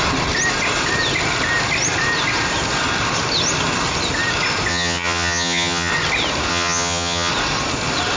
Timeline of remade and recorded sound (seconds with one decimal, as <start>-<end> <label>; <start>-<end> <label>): 0.0-4.7 recorded; 4.7-5.9 remade; 5.9-6.5 recorded; 6.5-7.3 remade; 7.3-8.2 recorded